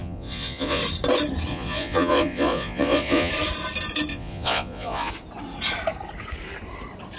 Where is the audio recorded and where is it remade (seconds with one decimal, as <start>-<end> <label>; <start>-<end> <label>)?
0.0-0.8 remade; 0.8-1.5 recorded; 1.5-3.3 remade; 3.3-4.1 recorded; 4.1-5.1 remade; 5.1-7.2 recorded